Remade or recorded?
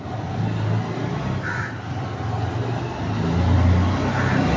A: recorded